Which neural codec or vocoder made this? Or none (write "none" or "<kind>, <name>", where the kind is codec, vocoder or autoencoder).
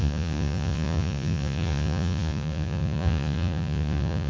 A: vocoder, Vocos